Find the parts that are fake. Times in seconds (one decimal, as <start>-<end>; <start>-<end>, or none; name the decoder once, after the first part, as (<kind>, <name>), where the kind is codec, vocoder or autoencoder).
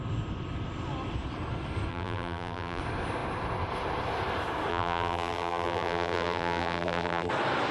1.9-2.8 (vocoder, BigVGAN v2); 4.7-7.3